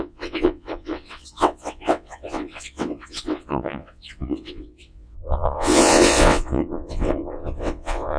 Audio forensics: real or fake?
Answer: fake